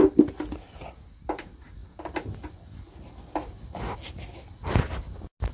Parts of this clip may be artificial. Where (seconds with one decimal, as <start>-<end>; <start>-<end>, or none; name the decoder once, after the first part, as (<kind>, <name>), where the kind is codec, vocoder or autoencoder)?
none